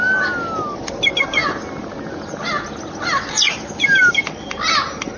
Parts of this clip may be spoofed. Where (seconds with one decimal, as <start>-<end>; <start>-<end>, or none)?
none